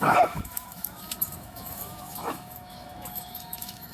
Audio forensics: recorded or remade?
remade